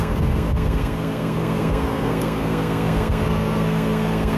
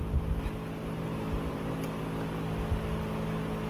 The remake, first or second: first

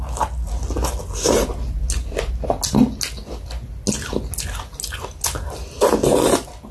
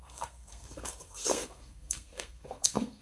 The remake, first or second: second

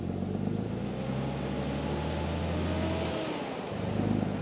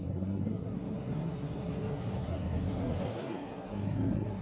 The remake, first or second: second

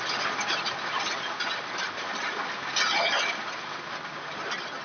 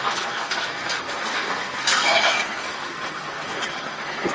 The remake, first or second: second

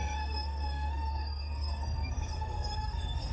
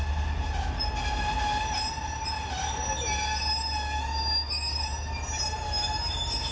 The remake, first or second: first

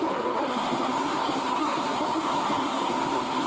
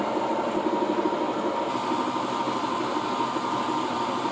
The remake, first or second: first